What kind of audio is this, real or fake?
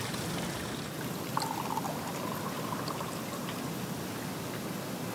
real